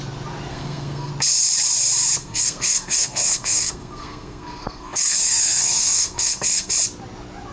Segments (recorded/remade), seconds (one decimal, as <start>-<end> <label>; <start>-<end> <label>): 0.0-0.5 recorded; 0.5-1.1 remade; 1.1-2.2 recorded; 2.2-6.7 remade; 6.7-7.5 recorded